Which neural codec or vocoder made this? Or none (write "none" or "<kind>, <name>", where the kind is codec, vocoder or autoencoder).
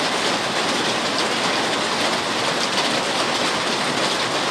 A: none